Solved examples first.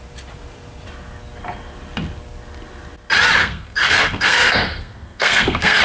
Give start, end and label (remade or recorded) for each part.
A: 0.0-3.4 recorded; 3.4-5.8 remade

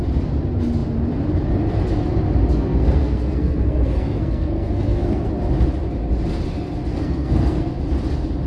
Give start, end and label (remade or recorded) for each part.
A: 0.0-2.5 recorded; 2.5-5.3 remade; 5.3-6.9 recorded; 6.9-7.7 remade; 7.7-8.5 recorded

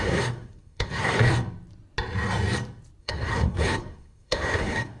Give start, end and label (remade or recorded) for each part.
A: 0.0-1.3 remade; 1.3-3.0 recorded; 3.0-5.0 remade

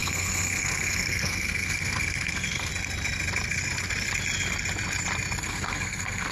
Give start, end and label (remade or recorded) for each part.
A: 0.0-2.7 remade; 2.7-5.4 recorded; 5.4-6.3 remade